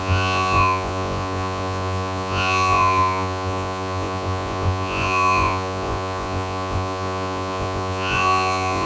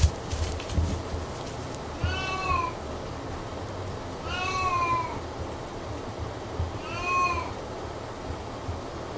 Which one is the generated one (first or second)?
first